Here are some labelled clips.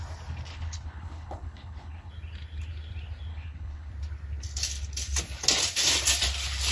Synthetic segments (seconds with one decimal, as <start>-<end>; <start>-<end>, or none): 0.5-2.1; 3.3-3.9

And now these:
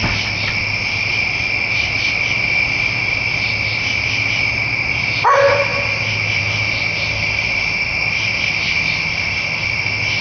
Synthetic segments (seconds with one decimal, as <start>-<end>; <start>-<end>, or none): none

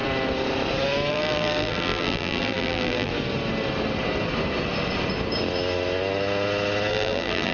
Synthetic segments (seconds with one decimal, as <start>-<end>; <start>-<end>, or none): 1.1-3.1; 6.9-7.5

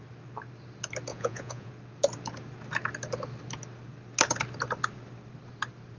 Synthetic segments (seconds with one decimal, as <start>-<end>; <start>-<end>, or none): 1.1-1.7

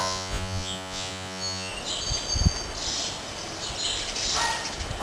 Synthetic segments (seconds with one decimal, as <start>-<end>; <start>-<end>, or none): 0.0-1.7

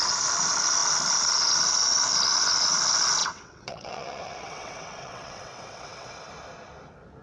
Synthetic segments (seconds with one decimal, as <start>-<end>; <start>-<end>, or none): 3.2-6.3